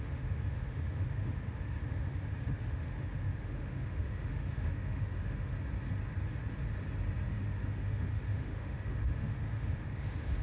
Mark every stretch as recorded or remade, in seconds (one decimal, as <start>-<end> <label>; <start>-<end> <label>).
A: 0.0-5.5 remade; 5.5-7.3 recorded; 7.3-10.4 remade